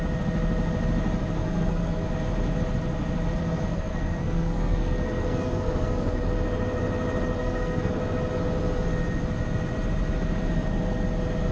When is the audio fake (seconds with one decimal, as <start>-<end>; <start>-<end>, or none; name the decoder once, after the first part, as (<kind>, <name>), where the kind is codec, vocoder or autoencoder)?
1.4-2.1 (codec, SNAC); 3.4-6.2; 7.4-8.0